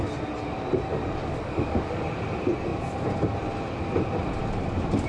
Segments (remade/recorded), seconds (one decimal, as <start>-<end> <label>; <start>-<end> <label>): 0.0-0.9 recorded; 0.9-2.0 remade; 2.0-5.1 recorded